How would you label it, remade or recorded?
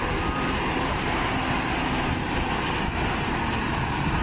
recorded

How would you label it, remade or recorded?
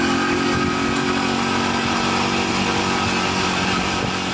recorded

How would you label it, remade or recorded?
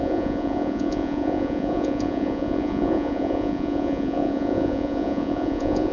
remade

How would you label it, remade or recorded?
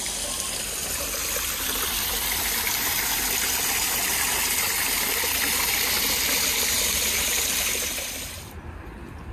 recorded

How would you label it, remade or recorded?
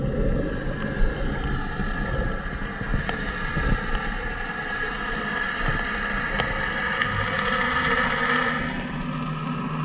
recorded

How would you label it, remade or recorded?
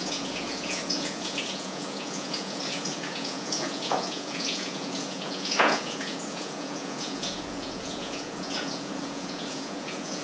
remade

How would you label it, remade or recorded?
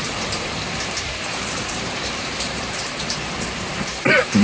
remade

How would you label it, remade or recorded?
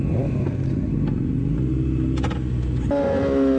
recorded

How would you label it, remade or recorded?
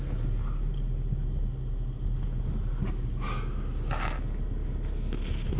recorded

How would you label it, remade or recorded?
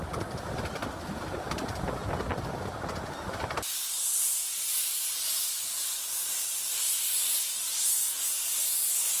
recorded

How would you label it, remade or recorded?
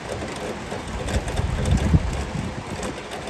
recorded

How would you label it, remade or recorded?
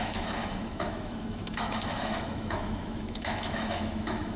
remade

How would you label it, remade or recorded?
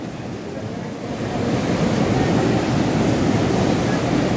recorded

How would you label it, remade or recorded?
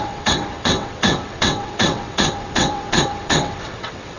remade